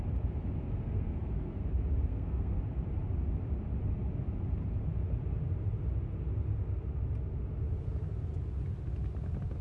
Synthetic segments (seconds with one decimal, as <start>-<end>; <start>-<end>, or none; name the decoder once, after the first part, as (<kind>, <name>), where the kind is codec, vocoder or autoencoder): 0.7-1.6 (codec, SNAC); 2.1-2.6